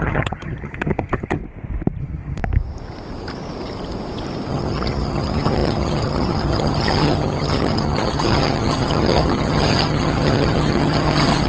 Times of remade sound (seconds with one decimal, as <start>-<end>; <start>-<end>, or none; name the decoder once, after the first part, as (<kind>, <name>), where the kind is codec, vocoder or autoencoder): 0.0-1.4 (vocoder, HiFi-GAN); 2.0-2.4; 4.5-11.5